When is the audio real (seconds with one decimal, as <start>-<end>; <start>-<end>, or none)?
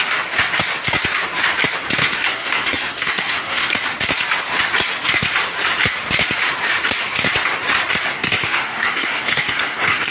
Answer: 0.0-2.0; 3.7-8.1